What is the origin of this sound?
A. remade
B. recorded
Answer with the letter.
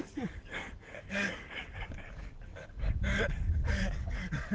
A